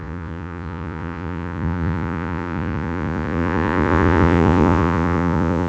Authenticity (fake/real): fake